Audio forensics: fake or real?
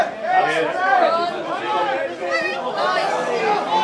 real